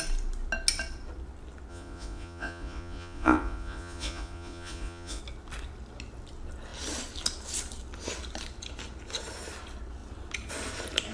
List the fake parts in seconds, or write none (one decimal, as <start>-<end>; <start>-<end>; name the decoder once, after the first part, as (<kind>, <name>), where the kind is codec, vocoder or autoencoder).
1.7-5.2 (vocoder, Vocos)